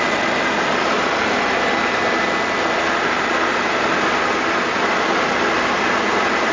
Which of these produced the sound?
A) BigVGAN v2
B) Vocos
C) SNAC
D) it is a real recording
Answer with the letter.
D